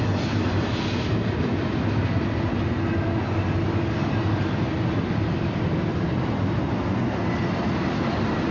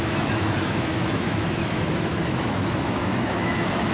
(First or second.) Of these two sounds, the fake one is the second